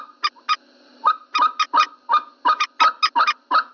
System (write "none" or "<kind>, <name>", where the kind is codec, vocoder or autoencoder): none